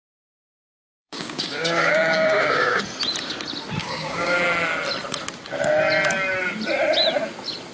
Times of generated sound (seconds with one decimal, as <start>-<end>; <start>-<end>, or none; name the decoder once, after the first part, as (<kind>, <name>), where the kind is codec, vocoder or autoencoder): 0.7-2.8 (codec, DAC); 3.8-4.4